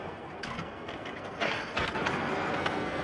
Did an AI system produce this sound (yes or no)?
yes